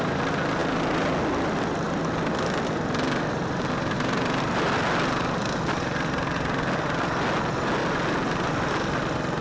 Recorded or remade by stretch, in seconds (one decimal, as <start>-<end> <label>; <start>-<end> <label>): 0.0-9.4 recorded